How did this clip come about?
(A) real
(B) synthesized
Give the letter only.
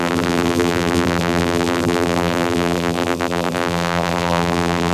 B